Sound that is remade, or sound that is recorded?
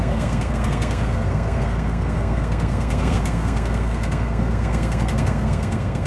remade